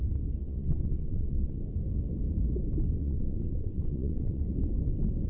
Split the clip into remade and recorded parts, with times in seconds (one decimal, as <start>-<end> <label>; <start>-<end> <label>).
0.0-0.4 recorded; 0.4-1.6 remade; 1.6-3.0 recorded; 3.0-4.4 remade; 4.4-5.3 recorded